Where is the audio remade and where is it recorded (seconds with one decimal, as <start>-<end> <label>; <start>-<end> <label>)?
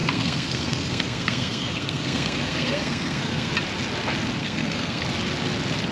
0.0-3.5 remade; 3.5-4.4 recorded; 4.4-5.0 remade; 5.0-5.9 recorded